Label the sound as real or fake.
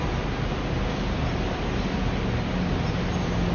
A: real